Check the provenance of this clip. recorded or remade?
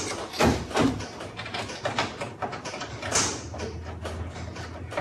recorded